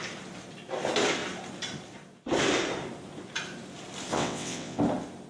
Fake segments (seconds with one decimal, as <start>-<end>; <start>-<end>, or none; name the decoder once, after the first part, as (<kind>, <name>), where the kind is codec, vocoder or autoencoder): 4.1-4.8 (vocoder, WaveNeXt)